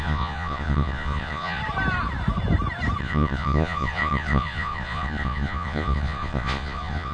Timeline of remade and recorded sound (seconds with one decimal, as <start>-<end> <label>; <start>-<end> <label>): 0.0-1.6 remade; 1.6-3.0 recorded; 3.0-7.1 remade